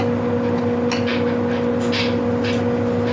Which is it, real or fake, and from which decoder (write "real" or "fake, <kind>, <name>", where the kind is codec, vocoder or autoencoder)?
real